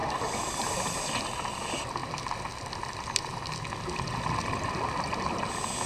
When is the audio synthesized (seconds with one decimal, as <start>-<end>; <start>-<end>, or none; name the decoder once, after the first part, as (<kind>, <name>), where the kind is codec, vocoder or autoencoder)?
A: none